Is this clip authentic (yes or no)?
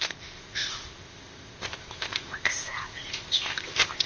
no